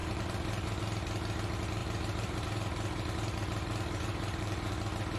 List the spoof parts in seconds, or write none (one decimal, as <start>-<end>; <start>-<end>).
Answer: 0.0-0.8; 1.8-4.7